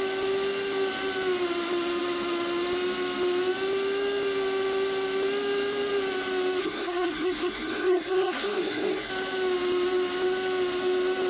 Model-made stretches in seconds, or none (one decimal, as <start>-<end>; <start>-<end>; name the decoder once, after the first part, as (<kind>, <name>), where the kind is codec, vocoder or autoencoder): 6.6-9.1 (codec, SNAC)